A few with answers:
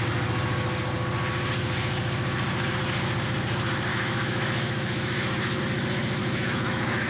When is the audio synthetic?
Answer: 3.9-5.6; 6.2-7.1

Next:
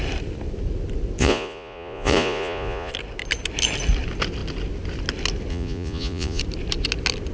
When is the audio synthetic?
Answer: 1.2-2.9; 5.5-6.4